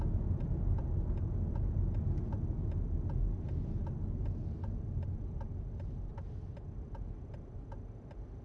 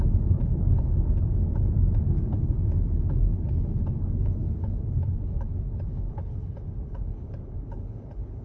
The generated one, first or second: second